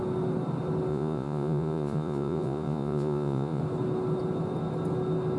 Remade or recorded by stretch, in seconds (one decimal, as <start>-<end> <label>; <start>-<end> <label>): 0.0-0.9 recorded; 0.9-3.6 remade; 3.6-5.4 recorded